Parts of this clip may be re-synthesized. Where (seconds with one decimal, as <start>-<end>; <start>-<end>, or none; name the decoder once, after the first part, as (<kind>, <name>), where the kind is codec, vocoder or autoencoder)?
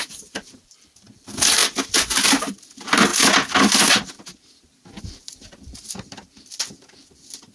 0.0-3.1 (vocoder, BigVGAN v2); 5.0-7.5